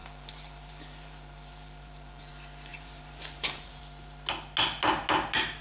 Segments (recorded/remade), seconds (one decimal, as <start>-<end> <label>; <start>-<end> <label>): 0.0-2.3 remade; 2.3-2.7 recorded; 2.7-3.8 remade; 3.8-5.6 recorded